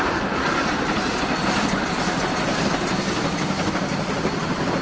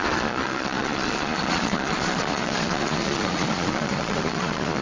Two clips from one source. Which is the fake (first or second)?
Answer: second